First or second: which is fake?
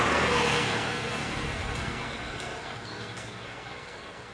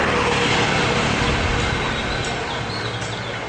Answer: first